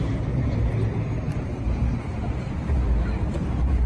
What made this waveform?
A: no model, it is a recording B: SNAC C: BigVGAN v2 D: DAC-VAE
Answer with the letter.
A